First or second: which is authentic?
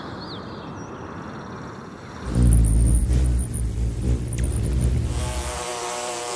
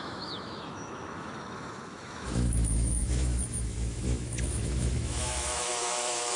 first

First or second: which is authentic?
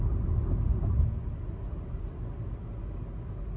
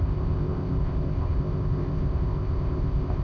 first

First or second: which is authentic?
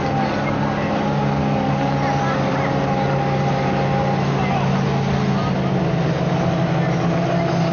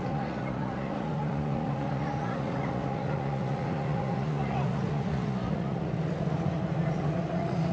first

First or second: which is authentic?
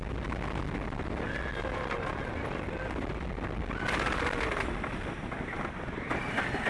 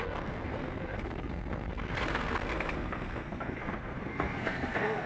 first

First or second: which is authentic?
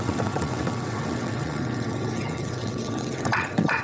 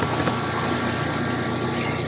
second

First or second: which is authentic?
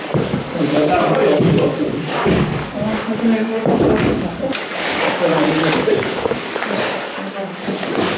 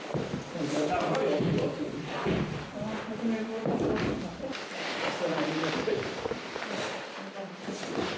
second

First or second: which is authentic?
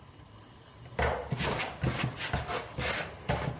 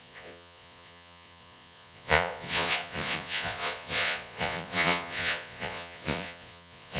first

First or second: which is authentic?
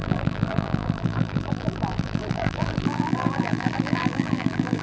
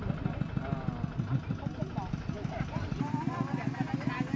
second